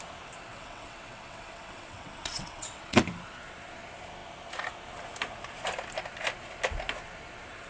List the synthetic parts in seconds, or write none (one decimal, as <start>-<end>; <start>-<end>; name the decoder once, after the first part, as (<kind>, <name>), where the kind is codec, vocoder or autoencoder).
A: 0.5-3.0 (vocoder, WaveNeXt)